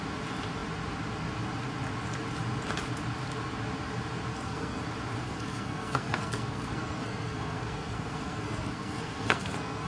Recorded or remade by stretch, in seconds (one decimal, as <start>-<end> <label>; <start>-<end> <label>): 0.0-4.3 recorded; 4.3-4.8 remade; 4.8-5.2 recorded; 5.2-9.9 remade